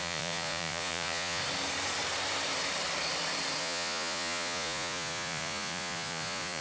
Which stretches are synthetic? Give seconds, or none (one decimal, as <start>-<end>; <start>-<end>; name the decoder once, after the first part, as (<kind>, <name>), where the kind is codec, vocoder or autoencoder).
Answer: 0.0-1.4 (vocoder, Vocos); 3.6-6.6